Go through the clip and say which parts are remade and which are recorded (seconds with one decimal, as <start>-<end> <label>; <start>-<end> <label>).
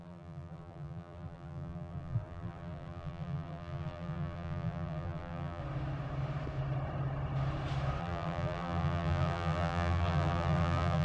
0.0-5.6 remade; 5.6-8.0 recorded; 8.0-11.0 remade